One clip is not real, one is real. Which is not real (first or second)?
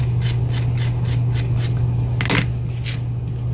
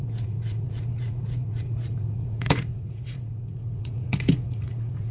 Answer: second